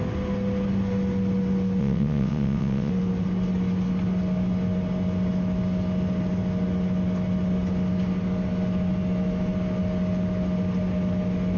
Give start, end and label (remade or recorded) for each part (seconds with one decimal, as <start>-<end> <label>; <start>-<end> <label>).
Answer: 0.0-1.8 recorded; 1.8-2.9 remade; 2.9-11.6 recorded

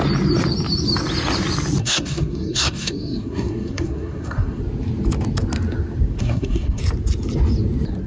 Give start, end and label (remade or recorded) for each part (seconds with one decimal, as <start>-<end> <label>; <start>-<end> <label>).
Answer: 0.0-1.8 recorded; 1.8-4.6 remade; 4.6-6.2 recorded; 6.2-6.8 remade; 6.8-8.1 recorded